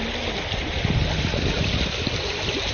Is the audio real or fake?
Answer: real